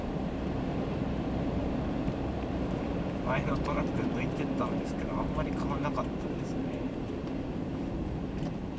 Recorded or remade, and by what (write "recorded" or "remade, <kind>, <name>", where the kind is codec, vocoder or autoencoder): remade, vocoder, BigVGAN v2